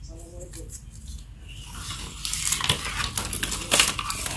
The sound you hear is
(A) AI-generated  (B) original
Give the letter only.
B